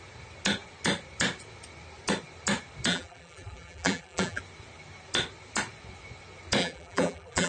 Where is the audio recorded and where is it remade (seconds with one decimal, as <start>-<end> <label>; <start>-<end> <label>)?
0.0-2.9 recorded; 2.9-4.4 remade; 4.4-6.6 recorded; 6.6-7.5 remade